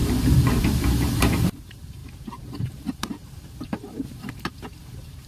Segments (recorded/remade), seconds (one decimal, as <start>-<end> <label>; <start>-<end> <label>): 0.0-5.3 remade

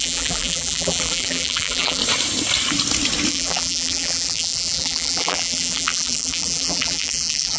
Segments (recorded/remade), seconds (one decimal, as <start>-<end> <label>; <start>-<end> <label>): 0.0-2.0 remade; 2.0-3.3 recorded; 3.3-7.6 remade